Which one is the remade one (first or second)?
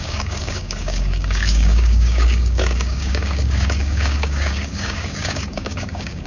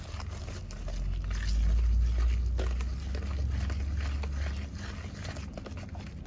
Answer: first